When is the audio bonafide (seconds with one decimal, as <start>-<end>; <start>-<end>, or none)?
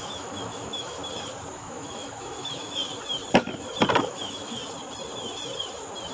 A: 1.0-1.5; 2.8-4.0; 4.6-6.1